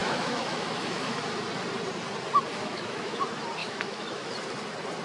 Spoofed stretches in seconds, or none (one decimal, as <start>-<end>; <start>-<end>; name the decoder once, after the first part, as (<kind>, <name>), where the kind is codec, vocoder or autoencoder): 0.0-1.2 (autoencoder, DAC-VAE); 2.6-3.2; 3.6-4.3